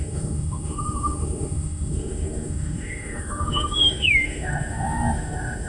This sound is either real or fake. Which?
fake